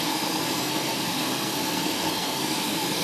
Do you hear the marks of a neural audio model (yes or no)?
yes